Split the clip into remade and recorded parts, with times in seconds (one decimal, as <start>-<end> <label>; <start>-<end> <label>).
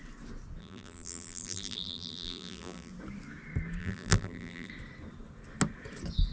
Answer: 0.0-0.6 recorded; 0.6-2.9 remade; 2.9-3.8 recorded; 3.8-4.7 remade; 4.7-6.3 recorded